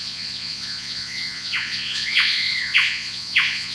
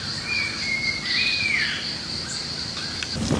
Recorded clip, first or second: second